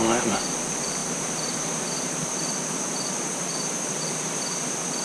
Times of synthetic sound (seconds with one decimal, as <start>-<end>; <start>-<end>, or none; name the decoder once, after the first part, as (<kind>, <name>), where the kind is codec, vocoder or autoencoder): 1.0-4.0 (vocoder, BigVGAN v2)